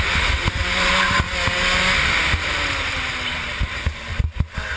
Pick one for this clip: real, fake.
real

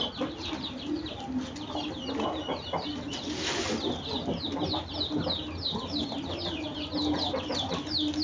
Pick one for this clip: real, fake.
real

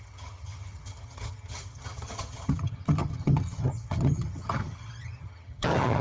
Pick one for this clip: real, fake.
fake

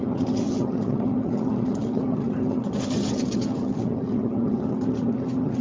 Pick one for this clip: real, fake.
fake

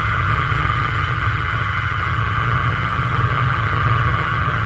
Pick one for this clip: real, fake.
fake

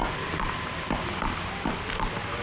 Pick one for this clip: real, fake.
real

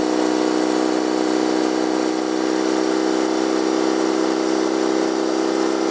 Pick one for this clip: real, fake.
real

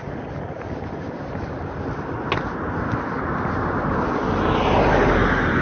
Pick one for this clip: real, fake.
real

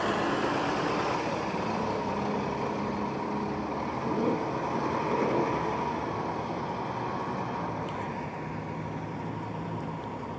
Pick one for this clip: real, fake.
real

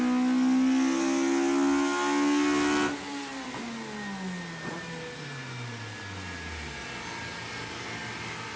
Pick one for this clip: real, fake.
real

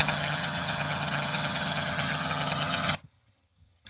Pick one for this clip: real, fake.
fake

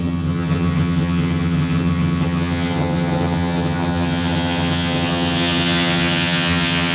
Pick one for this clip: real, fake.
fake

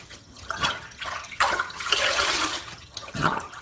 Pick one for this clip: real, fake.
fake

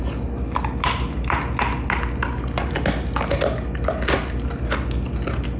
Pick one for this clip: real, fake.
real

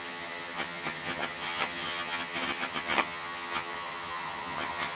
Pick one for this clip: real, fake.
fake